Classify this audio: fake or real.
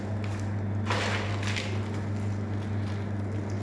real